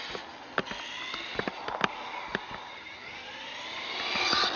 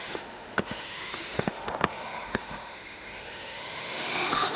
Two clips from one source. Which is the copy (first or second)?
second